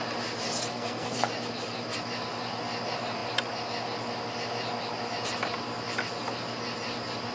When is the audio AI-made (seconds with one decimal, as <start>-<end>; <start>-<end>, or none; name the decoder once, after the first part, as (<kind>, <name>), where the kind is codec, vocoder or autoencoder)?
0.7-1.3 (codec, SNAC)